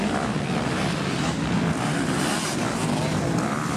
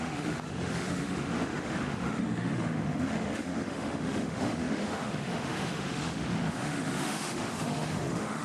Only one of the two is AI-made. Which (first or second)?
second